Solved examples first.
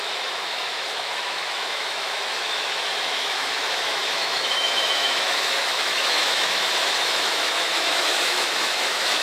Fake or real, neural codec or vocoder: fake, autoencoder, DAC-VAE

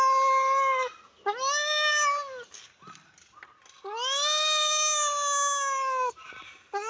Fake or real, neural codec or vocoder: real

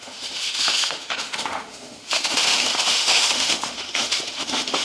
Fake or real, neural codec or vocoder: fake, autoencoder, DAC-VAE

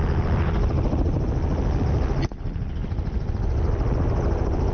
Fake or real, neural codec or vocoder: real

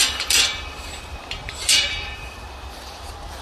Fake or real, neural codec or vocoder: real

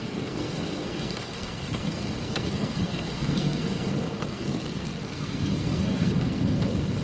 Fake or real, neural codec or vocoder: fake, codec, SNAC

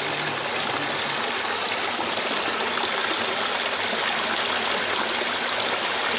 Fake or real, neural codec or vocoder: real